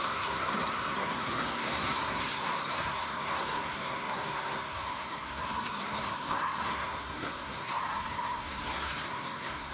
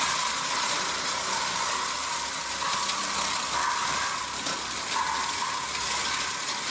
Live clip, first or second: second